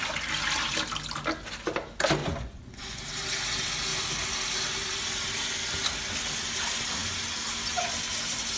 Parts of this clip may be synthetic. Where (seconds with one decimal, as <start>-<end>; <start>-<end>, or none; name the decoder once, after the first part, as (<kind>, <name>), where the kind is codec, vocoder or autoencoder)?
2.2-3.0 (vocoder, Vocos)